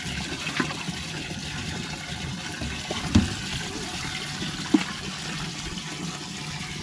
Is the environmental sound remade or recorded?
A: recorded